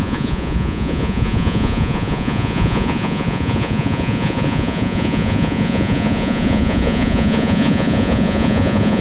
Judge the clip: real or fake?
fake